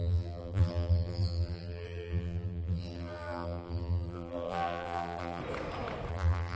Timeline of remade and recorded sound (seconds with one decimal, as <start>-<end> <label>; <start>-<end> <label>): 0.0-5.4 remade; 5.4-6.1 recorded; 6.1-6.6 remade